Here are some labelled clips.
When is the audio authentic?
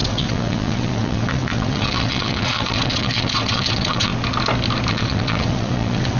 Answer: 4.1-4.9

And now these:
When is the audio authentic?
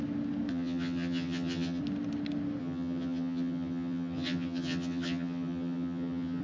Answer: 0.0-0.5; 1.8-2.6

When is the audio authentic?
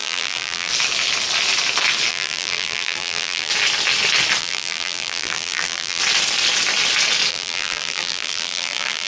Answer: 0.7-2.1; 3.5-4.4; 6.0-7.3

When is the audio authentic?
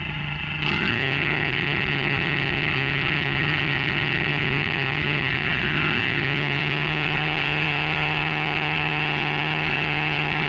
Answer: none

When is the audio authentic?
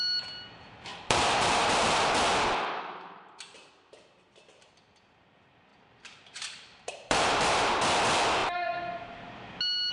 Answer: 0.0-0.9; 2.1-5.7; 7.8-9.9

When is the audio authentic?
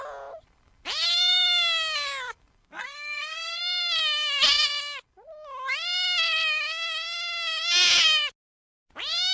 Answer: 0.0-2.6; 3.6-9.3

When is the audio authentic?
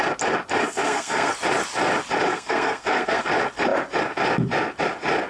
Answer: 0.0-0.6; 1.3-2.3; 3.3-5.3